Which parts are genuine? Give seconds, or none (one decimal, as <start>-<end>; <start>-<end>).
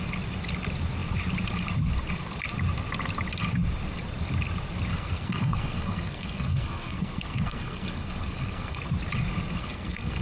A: 0.0-4.9; 8.8-9.6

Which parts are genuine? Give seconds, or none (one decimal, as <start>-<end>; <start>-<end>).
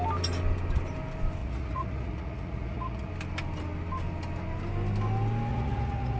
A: 0.0-1.4; 3.1-5.5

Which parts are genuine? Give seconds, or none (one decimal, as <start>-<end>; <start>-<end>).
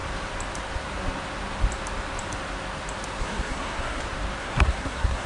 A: 0.0-3.2; 4.0-4.4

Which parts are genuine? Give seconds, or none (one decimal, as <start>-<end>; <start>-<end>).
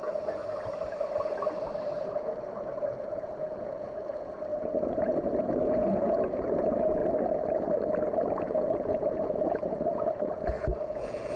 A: 0.4-2.0; 7.0-8.4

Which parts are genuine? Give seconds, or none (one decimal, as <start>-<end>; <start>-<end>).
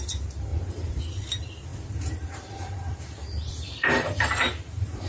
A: 0.0-0.5; 1.0-1.7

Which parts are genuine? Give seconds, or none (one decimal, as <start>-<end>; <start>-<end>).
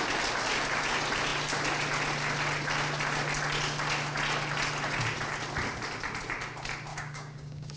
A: 0.0-6.9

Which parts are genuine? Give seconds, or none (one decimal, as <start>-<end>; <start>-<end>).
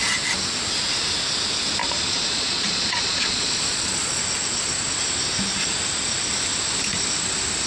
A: 0.0-1.8; 4.2-7.7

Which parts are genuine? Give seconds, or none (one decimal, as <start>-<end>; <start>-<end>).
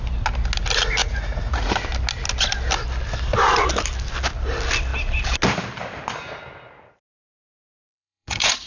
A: 0.0-1.0; 1.7-7.8